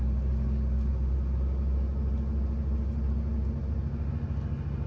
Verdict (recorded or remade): recorded